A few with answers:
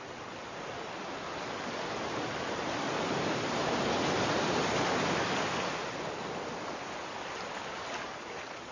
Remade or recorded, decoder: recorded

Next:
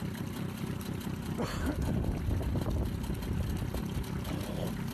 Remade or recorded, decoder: recorded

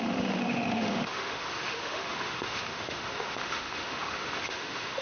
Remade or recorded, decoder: remade, autoencoder, DAC-VAE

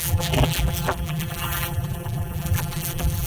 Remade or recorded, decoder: remade, vocoder, BigVGAN v2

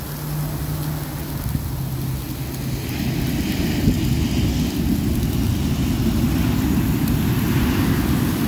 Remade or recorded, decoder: recorded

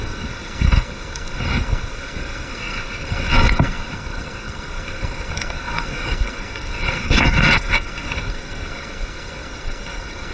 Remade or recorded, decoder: remade, codec, SNAC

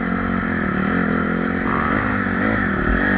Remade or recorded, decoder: recorded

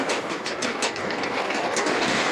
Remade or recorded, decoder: remade, codec, DAC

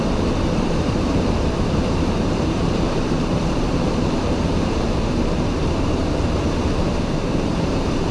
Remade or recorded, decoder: remade, vocoder, BigVGAN v2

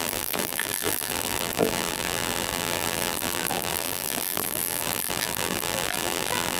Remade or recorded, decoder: remade, vocoder, BigVGAN v2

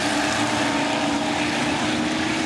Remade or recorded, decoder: recorded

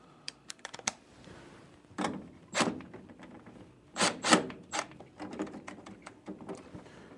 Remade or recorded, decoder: remade, vocoder, BigVGAN v2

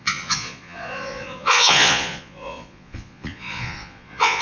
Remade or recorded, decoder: remade, vocoder, Vocos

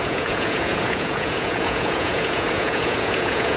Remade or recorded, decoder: remade, vocoder, Vocos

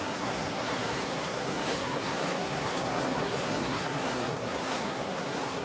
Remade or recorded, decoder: remade, codec, SNAC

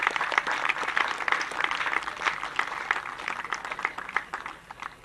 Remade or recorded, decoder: remade, vocoder, BigVGAN v2